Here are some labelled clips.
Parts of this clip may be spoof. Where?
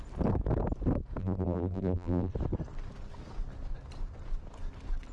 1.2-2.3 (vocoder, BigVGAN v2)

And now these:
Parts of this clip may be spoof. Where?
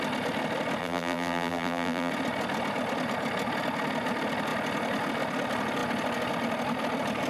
0.8-2.1 (vocoder, BigVGAN v2)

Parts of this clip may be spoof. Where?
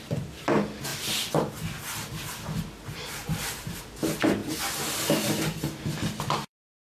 0.0-0.9 (vocoder, BigVGAN v2); 3.1-4.4; 6.1-7.0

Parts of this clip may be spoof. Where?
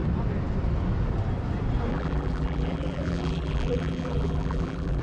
1.9-5.0 (vocoder, BigVGAN v2)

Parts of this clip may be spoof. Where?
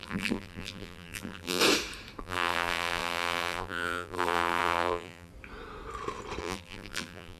0.0-1.6 (vocoder, BigVGAN v2); 2.2-5.3; 6.4-7.4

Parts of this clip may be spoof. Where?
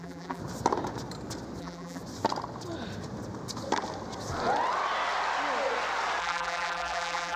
0.0-0.4 (vocoder, BigVGAN v2); 1.6-2.0; 6.2-7.4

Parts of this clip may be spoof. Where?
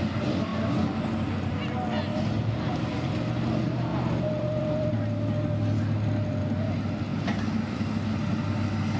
2.1-3.1 (vocoder, BigVGAN v2); 3.9-4.9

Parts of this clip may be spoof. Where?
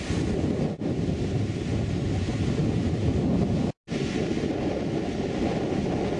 none